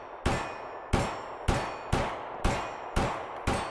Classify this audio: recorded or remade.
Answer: recorded